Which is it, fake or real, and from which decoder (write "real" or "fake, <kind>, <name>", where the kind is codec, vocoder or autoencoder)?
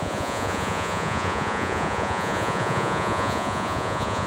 fake, vocoder, Vocos